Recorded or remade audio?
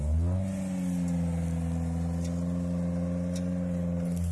recorded